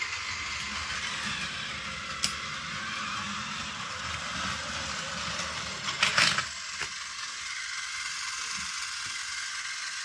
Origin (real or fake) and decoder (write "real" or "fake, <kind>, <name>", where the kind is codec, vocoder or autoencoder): real